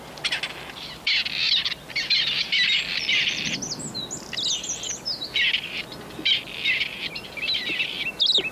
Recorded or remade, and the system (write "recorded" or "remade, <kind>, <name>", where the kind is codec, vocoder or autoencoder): recorded